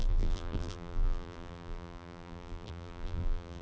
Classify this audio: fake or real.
fake